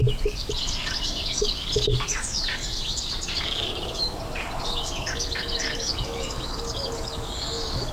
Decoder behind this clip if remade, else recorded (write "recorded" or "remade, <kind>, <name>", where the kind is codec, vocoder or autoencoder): remade, codec, DAC